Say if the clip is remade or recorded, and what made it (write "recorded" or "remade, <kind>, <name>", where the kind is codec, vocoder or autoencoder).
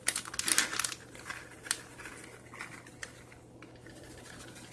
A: recorded